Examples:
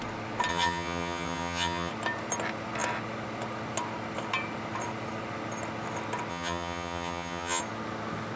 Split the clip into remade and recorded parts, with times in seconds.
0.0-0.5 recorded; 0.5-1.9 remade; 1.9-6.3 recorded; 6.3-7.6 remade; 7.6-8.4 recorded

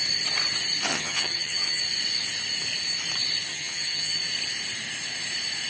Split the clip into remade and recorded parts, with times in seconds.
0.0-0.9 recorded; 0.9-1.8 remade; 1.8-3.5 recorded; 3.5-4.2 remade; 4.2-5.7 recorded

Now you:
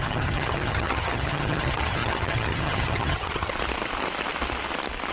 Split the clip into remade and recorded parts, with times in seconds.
0.0-3.5 remade; 3.5-5.1 recorded

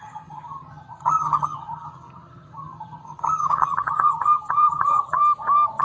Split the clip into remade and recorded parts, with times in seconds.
0.0-5.2 remade; 5.2-5.8 recorded